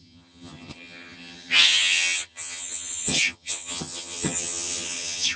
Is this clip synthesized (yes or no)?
yes